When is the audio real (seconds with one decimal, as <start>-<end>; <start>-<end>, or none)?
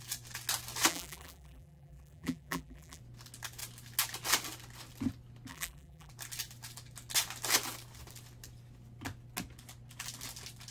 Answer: 0.0-0.9; 3.0-5.5; 6.1-10.7